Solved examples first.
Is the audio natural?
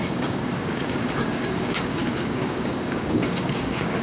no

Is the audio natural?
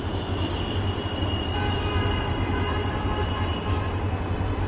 yes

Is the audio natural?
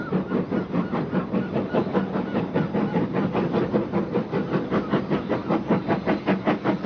yes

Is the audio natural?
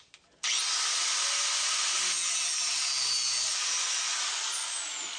yes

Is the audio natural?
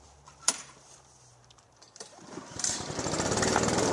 no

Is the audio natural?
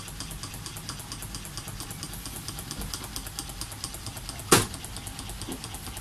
yes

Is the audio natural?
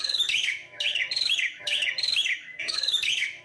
no